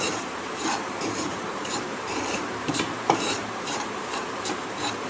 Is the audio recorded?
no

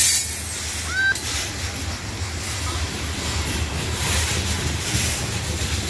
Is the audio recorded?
yes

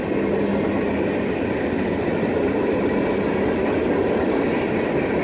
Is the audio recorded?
yes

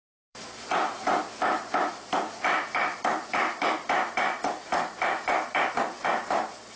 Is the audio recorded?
no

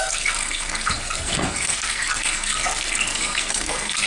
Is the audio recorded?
no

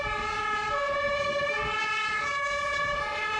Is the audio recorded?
no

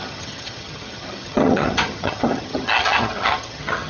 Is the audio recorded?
no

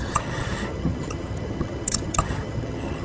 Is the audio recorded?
no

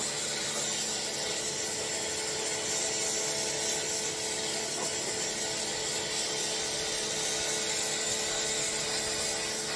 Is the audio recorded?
yes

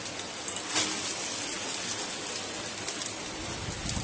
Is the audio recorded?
yes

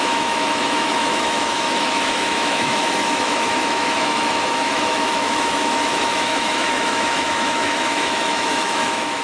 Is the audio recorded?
no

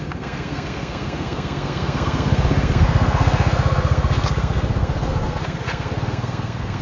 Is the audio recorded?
no